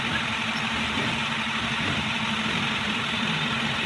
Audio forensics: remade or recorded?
remade